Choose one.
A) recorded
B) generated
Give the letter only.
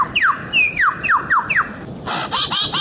A